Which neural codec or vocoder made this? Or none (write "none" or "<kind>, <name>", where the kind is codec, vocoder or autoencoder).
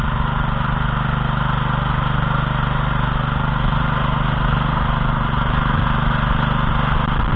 none